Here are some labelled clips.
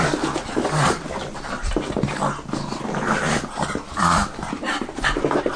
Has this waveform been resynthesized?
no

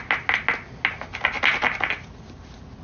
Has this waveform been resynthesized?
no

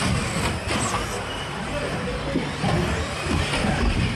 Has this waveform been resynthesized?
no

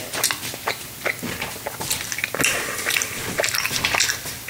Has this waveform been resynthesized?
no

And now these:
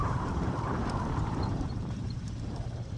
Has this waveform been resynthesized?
yes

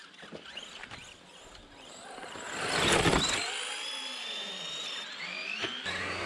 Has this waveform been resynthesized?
no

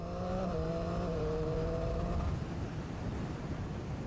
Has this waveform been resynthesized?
yes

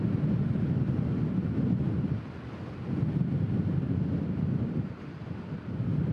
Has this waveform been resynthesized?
yes